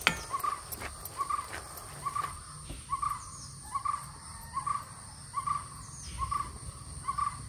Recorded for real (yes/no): yes